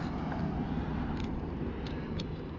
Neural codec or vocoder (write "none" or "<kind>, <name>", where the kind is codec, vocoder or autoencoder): none